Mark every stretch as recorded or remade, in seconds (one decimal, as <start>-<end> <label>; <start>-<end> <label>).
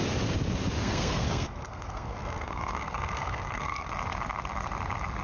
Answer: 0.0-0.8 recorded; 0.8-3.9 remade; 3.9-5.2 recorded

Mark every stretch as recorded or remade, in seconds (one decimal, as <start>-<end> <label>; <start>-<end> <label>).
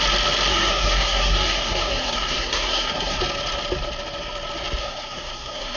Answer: 0.0-0.5 recorded; 0.5-3.2 remade; 3.2-4.8 recorded; 4.8-5.8 remade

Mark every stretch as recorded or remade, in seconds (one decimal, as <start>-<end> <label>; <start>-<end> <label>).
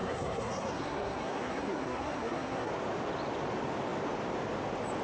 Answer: 0.0-2.7 remade; 2.7-5.0 recorded